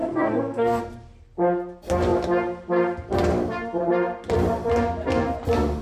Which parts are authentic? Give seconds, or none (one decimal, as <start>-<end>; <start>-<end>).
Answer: 0.8-5.8